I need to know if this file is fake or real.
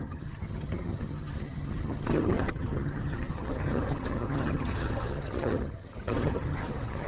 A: fake